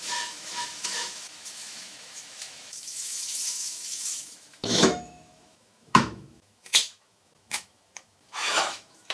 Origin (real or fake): fake